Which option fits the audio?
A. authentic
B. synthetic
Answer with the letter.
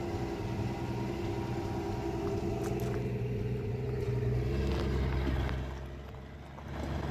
A